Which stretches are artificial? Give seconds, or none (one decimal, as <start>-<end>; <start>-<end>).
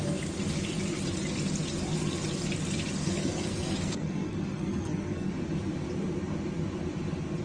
3.0-5.3